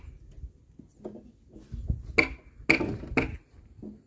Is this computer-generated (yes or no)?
no